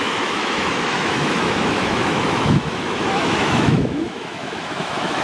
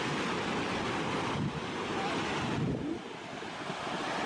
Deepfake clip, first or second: first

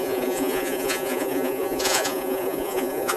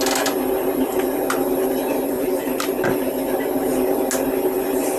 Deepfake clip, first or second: first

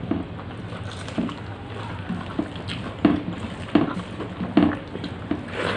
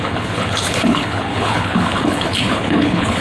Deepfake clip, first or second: second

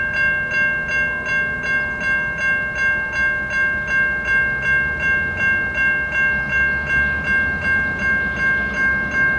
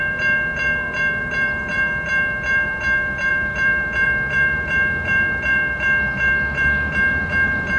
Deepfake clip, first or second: second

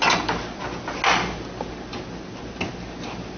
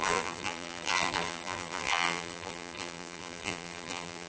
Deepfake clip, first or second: second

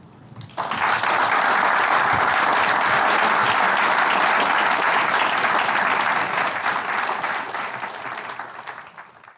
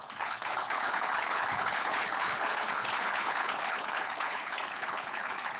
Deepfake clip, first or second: second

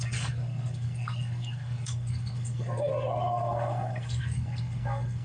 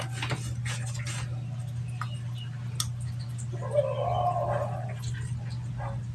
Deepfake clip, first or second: first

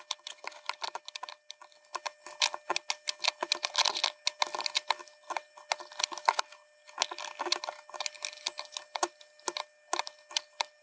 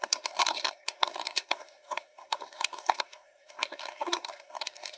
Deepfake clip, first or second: second